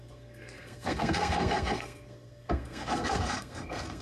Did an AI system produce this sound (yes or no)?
yes